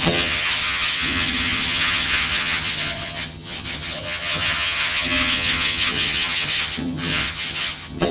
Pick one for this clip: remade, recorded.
remade